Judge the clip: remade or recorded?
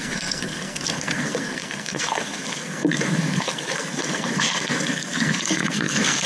remade